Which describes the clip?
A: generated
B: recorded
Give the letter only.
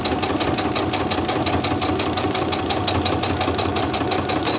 B